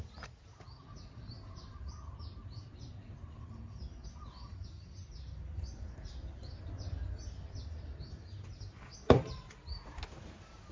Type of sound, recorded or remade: recorded